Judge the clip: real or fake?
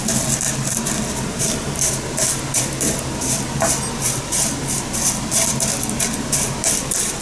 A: real